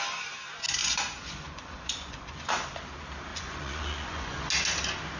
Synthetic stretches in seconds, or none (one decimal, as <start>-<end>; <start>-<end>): 0.8-2.5; 3.3-4.4